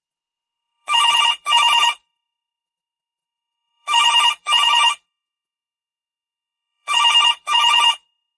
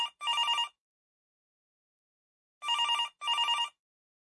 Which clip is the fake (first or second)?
first